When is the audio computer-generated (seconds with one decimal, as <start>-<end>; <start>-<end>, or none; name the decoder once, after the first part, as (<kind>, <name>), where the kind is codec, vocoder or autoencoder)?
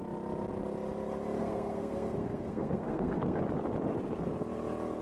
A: 1.4-3.4 (codec, SNAC)